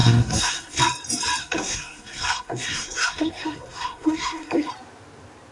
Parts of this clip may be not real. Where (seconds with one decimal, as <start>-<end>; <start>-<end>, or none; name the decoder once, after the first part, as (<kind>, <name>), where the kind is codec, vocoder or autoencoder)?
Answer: 0.0-0.8 (codec, SNAC); 1.4-4.7